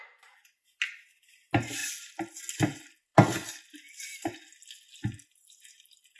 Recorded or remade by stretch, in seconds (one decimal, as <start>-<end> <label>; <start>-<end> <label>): 0.0-6.2 recorded